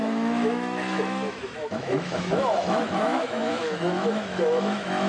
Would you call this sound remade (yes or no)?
yes